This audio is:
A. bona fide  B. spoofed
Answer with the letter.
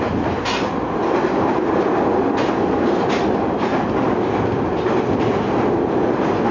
A